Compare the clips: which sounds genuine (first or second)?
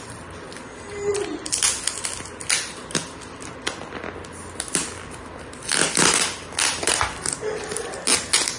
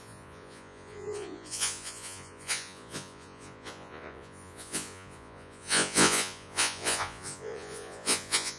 first